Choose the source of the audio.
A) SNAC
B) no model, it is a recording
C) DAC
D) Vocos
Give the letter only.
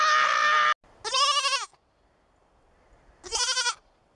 B